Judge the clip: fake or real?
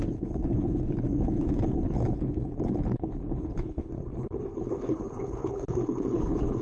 fake